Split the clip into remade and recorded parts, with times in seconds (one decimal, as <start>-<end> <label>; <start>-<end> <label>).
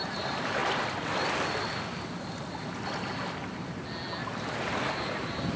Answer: 0.0-5.6 recorded